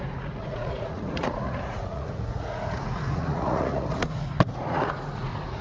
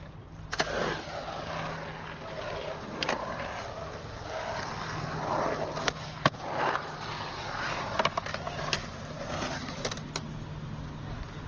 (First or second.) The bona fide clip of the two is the second